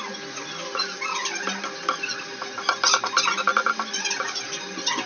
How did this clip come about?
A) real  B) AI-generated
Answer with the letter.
A